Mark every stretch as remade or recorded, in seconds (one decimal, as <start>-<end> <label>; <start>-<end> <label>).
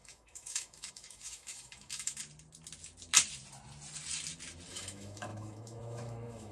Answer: 0.0-2.2 remade; 2.2-4.7 recorded; 4.7-6.5 remade